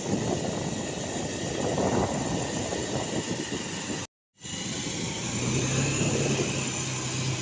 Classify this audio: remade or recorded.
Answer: recorded